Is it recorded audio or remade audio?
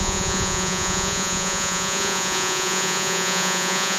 remade